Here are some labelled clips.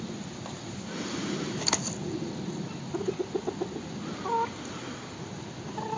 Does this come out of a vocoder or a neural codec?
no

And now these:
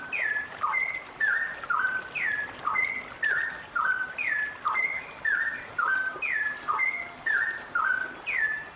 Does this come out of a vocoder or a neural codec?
no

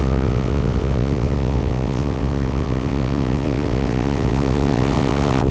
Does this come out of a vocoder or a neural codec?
yes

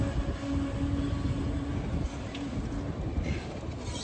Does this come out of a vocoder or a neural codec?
no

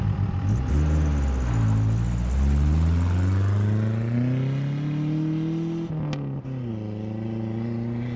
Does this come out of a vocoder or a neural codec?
no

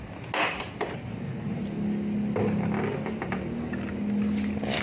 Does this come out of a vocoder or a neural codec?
no